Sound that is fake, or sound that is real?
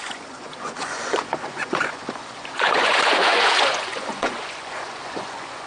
fake